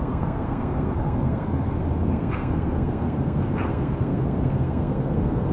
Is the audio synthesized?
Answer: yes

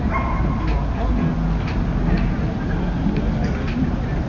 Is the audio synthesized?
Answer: no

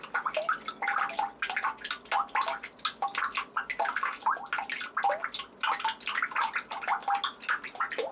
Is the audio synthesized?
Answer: no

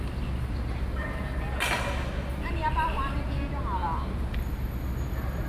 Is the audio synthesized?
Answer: no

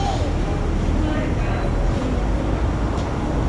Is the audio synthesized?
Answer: no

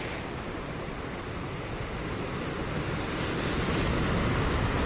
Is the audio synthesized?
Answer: no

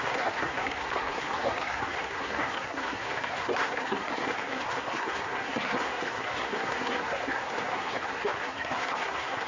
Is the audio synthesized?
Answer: yes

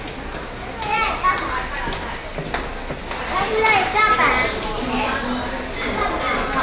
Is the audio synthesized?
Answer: no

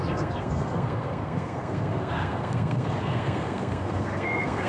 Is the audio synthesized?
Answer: yes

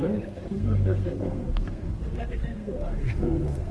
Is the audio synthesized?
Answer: yes